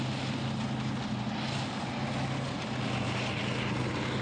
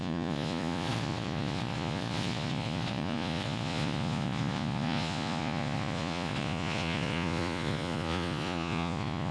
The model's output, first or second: second